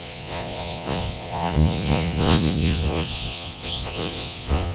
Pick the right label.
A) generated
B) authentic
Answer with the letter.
A